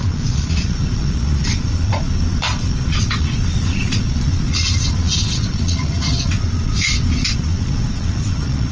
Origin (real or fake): fake